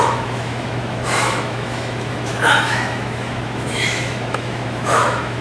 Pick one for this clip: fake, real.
fake